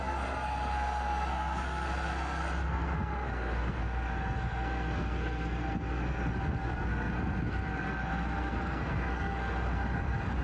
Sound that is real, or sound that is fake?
fake